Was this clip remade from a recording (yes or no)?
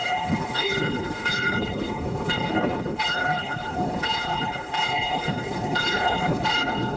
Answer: yes